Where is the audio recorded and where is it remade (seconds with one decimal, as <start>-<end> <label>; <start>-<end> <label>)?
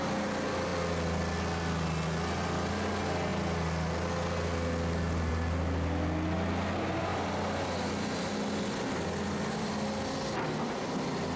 0.0-11.4 recorded